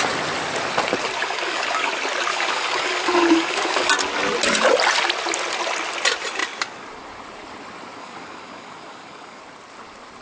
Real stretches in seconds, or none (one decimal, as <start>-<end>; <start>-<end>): 0.0-1.2; 1.9-2.3; 3.9-8.0; 9.4-10.2